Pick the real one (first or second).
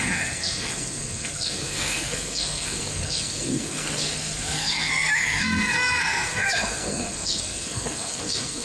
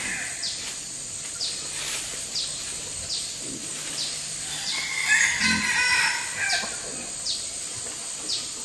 second